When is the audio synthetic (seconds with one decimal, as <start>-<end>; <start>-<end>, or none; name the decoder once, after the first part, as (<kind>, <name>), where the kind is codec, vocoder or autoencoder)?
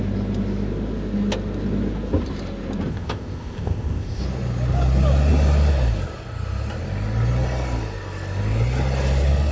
2.9-4.2 (codec, ZipCodec)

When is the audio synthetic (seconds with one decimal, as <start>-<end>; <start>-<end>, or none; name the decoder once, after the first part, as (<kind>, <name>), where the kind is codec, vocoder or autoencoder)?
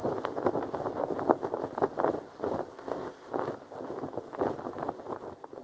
2.7-3.3 (codec, ZipCodec)